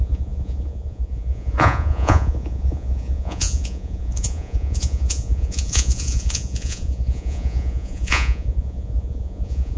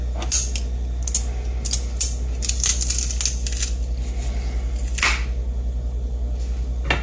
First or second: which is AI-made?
first